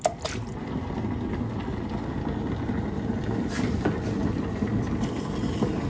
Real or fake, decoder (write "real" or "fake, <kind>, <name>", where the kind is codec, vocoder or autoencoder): real